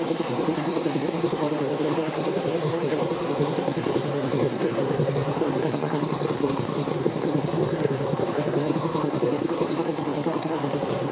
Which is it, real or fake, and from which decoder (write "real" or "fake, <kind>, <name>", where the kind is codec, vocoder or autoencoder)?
fake, codec, SNAC